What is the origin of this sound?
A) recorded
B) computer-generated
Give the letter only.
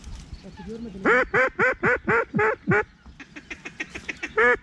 A